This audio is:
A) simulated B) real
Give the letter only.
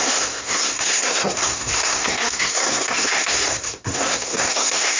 A